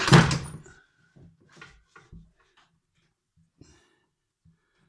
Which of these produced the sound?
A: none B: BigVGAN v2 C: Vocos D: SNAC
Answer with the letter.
A